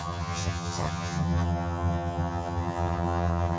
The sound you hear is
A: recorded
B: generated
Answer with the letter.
B